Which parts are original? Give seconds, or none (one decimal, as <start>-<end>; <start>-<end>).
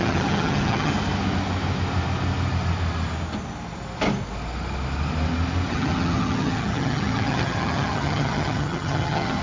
0.9-5.7